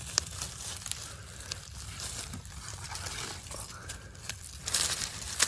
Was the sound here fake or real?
real